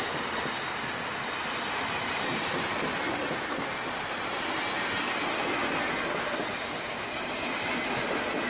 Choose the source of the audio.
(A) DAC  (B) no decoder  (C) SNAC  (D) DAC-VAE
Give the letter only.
B